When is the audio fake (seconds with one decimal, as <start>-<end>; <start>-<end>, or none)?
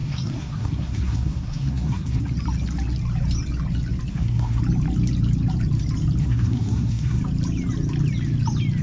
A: 0.0-2.2; 4.1-4.6; 6.2-7.2